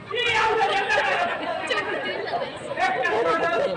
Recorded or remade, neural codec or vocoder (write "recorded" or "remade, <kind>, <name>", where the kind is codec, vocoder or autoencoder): remade, vocoder, Vocos